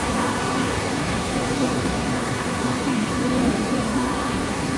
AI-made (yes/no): yes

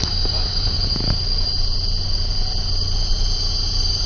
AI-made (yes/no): no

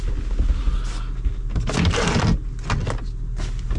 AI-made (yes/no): no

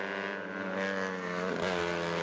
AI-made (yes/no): no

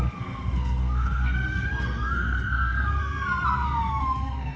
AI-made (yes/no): yes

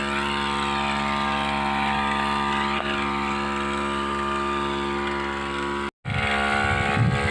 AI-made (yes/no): no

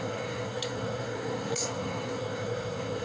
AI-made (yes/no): yes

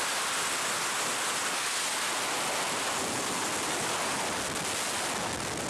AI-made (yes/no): no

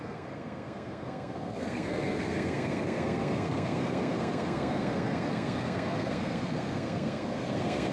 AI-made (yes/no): yes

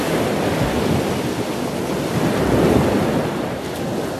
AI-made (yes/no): no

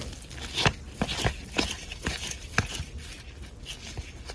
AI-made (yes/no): no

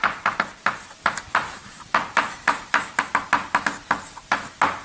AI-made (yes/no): no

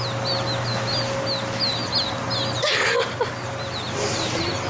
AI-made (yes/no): no